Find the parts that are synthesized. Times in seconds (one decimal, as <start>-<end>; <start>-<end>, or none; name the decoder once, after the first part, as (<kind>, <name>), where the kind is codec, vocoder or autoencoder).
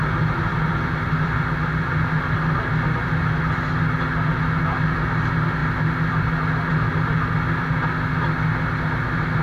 none